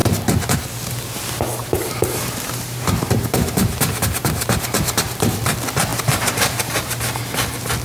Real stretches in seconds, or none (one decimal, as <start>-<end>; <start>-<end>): 0.0-1.6; 5.4-5.9; 7.0-7.8